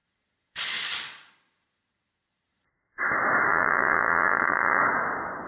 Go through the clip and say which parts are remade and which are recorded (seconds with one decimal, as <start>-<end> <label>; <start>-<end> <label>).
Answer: 0.0-2.7 remade; 2.7-3.5 recorded; 3.5-4.8 remade; 4.8-5.5 recorded